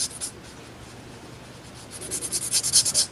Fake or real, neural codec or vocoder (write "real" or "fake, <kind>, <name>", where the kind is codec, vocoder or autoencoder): real